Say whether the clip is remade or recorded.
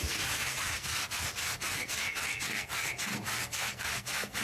remade